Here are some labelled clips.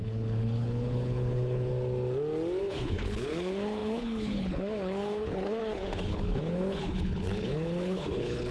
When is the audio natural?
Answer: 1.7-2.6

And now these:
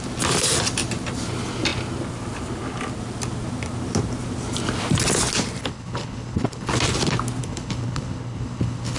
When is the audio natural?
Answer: 0.0-5.6; 6.7-7.4